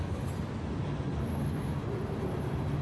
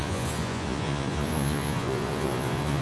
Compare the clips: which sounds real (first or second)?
first